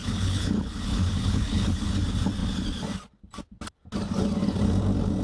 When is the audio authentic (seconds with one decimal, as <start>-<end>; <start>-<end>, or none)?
1.9-5.2